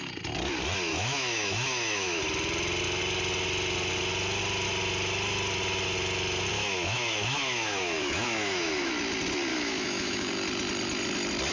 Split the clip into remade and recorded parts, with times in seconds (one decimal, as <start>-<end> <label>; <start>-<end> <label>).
0.0-0.9 recorded; 0.9-2.2 remade; 2.2-6.5 recorded; 6.5-8.9 remade; 8.9-9.5 recorded; 9.5-10.3 remade; 10.3-11.5 recorded